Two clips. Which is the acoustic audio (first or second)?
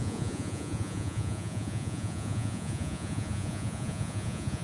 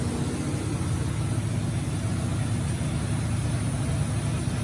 second